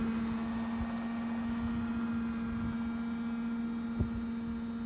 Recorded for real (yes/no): yes